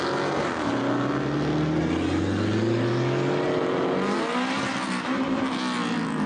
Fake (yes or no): no